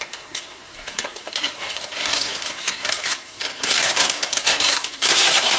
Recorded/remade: remade